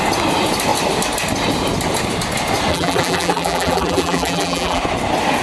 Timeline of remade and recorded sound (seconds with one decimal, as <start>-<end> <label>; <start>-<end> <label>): 0.0-2.7 recorded; 2.7-4.8 remade; 4.8-5.4 recorded